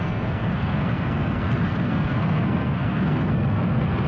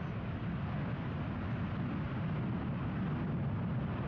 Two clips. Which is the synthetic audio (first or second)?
first